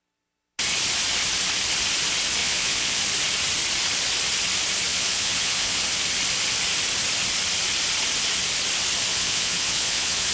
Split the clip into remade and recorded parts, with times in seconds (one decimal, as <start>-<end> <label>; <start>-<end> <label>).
0.0-2.4 recorded; 2.4-3.0 remade; 3.0-4.9 recorded; 4.9-5.8 remade; 5.8-9.1 recorded; 9.1-10.3 remade